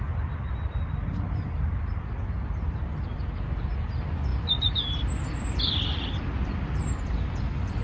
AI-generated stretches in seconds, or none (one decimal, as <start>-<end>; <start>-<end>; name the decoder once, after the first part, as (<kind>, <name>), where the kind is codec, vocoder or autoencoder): none